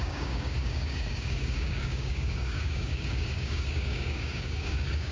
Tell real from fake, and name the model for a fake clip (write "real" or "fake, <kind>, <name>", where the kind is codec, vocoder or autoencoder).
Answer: fake, codec, DAC